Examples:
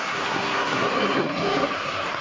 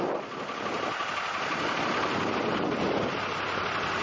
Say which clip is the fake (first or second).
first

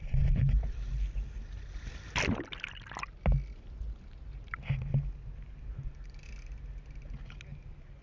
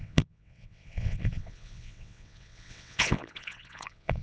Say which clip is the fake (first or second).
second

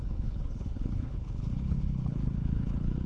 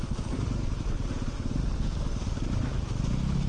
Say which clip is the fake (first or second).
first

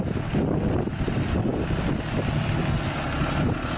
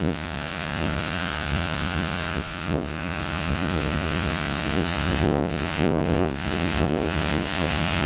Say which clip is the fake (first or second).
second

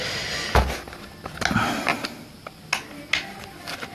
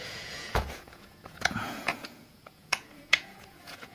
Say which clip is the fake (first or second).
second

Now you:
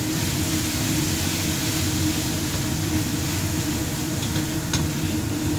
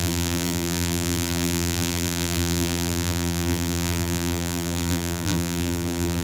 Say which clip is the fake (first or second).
second